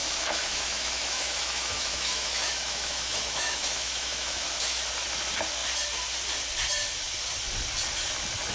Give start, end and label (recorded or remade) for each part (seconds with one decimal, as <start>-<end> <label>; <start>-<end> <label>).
0.0-4.9 remade; 4.9-8.5 recorded